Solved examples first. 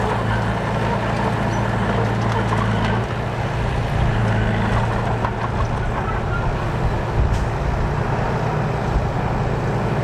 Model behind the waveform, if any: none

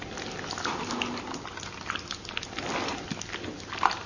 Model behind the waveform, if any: none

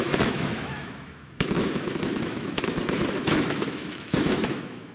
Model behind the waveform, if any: autoencoder, DAC-VAE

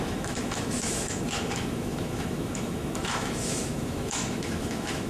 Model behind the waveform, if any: autoencoder, DAC-VAE